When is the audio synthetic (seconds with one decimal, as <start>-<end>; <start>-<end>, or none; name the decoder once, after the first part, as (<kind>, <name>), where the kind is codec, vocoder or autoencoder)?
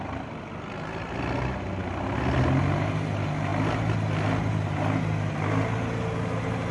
none